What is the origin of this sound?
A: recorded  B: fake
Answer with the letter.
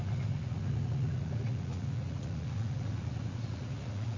B